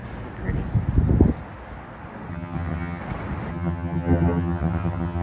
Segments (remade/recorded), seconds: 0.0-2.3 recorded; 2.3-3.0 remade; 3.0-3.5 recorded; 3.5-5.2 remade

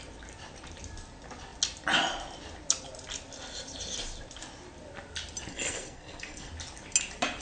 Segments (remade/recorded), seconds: 0.0-5.5 recorded; 5.5-6.5 remade; 6.5-7.4 recorded

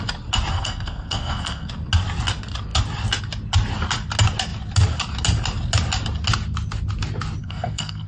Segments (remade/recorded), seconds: 0.0-0.5 recorded; 0.5-1.7 remade; 1.7-7.4 recorded; 7.4-8.1 remade

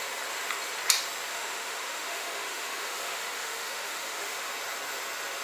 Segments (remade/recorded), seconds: 0.0-1.3 recorded; 1.3-4.5 remade; 4.5-5.4 recorded